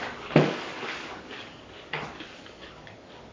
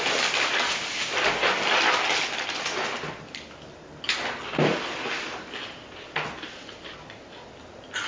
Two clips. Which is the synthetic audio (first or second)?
first